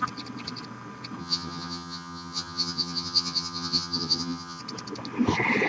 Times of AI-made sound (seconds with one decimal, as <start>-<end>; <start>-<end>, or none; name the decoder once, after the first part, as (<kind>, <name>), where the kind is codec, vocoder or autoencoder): 1.2-4.6 (vocoder, HiFi-GAN)